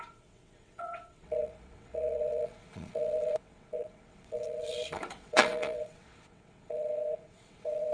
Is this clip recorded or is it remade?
remade